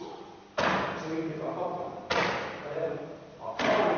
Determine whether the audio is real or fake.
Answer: real